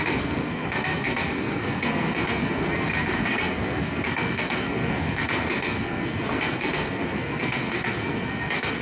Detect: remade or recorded remade